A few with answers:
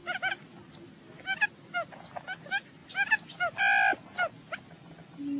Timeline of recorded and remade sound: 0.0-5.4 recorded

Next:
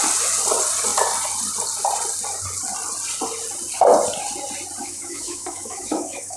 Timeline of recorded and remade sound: 0.0-4.8 recorded; 4.8-6.4 remade